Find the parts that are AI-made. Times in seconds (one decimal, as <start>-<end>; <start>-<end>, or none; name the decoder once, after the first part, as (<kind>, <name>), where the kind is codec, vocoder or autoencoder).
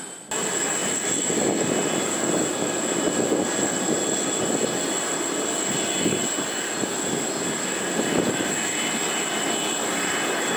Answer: none